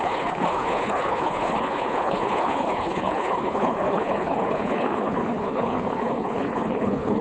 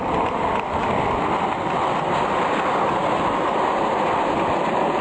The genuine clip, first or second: second